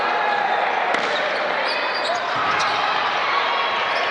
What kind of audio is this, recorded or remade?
recorded